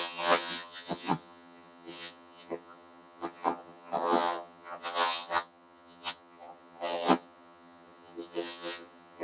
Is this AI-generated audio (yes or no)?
yes